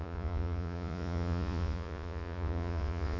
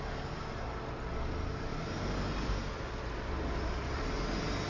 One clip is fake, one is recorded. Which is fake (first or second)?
first